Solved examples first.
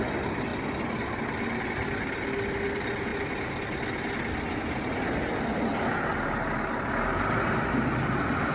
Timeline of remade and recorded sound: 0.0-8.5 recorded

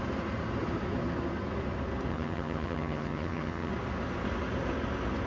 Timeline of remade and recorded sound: 0.0-2.1 recorded; 2.1-3.7 remade; 3.7-5.3 recorded

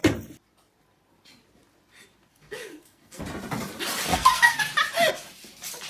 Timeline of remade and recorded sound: 0.0-2.3 recorded; 2.3-3.2 remade; 3.2-4.1 recorded; 4.1-4.6 remade; 4.6-5.9 recorded

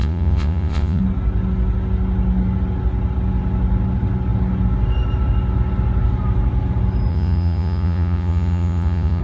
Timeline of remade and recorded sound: 0.0-1.0 remade; 1.0-7.1 recorded; 7.1-9.2 remade